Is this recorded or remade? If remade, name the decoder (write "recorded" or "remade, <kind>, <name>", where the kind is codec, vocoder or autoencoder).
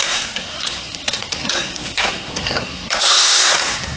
remade, codec, SNAC